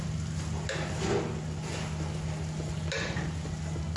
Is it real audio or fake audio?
real